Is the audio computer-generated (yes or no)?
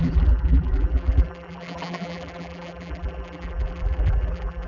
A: yes